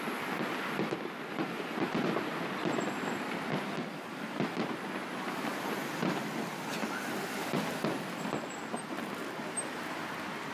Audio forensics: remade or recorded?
recorded